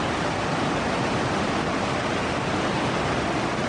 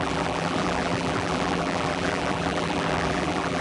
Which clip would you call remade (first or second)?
second